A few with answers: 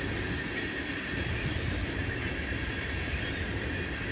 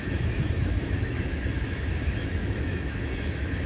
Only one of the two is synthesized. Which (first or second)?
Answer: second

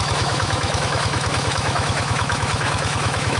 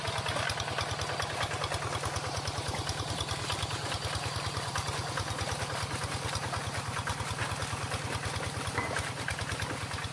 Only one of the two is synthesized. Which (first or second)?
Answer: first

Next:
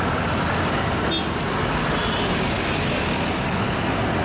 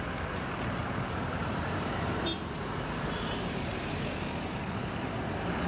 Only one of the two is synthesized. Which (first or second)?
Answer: second